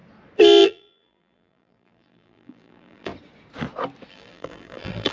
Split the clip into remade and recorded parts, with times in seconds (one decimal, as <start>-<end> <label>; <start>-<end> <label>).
0.0-0.6 recorded; 0.6-3.1 remade; 3.1-4.1 recorded; 4.1-5.1 remade